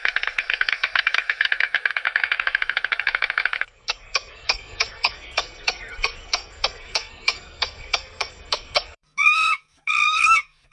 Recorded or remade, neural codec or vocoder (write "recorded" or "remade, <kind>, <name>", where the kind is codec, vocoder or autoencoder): remade, codec, SNAC